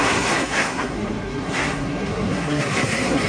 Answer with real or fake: fake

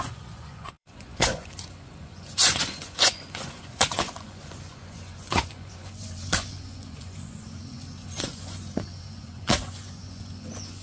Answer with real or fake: fake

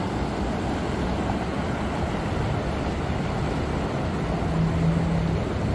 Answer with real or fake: real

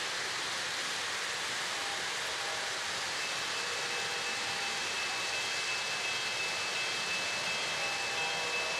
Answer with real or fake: real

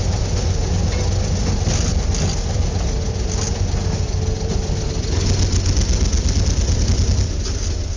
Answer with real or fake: real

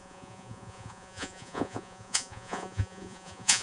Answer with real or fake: fake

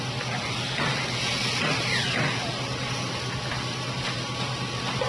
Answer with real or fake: real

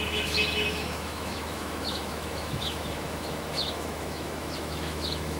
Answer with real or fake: fake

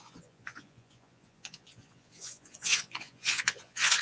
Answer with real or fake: fake